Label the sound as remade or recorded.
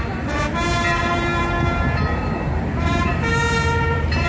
remade